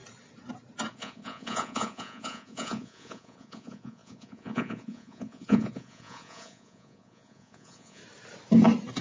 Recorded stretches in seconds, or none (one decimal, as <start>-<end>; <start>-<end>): 0.0-0.9; 8.0-9.0